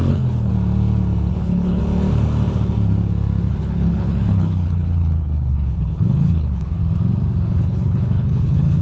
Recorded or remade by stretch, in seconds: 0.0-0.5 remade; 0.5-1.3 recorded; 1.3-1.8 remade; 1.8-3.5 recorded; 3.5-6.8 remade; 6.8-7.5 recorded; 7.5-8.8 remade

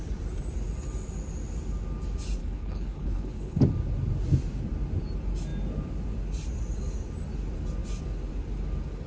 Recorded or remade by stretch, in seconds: 0.0-2.4 recorded; 2.4-3.6 remade; 3.6-9.1 recorded

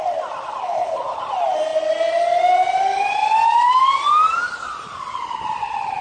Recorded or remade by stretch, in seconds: 0.0-0.6 recorded; 0.6-1.2 remade; 1.2-6.0 recorded

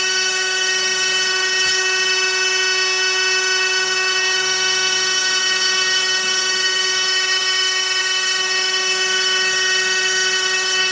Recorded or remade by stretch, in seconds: 0.0-10.9 remade

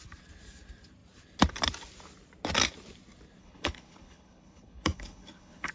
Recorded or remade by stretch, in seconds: 0.0-3.4 recorded; 3.4-5.7 remade

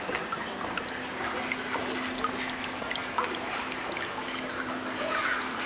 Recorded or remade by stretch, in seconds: 0.0-5.7 recorded

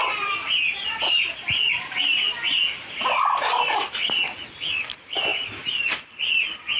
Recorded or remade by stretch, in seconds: 0.0-6.8 recorded

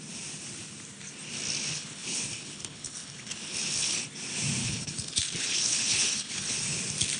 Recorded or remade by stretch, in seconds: 0.0-1.7 recorded; 1.7-4.0 remade; 4.0-4.6 recorded; 4.6-6.8 remade; 6.8-7.2 recorded